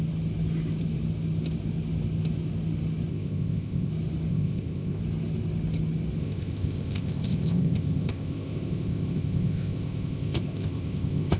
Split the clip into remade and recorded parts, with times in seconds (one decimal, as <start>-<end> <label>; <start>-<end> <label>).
0.0-3.1 recorded; 3.1-3.9 remade; 3.9-4.3 recorded; 4.3-5.0 remade; 5.0-6.2 recorded; 6.2-11.4 remade

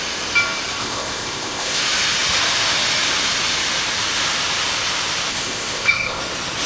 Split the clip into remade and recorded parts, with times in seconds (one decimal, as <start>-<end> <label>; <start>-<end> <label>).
0.0-0.8 recorded; 0.8-1.8 remade; 1.8-5.3 recorded; 5.3-6.2 remade; 6.2-6.7 recorded

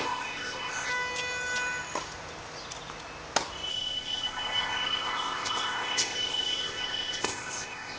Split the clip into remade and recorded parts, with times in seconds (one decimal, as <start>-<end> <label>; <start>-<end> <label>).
0.0-0.9 remade; 0.9-3.7 recorded; 3.7-8.0 remade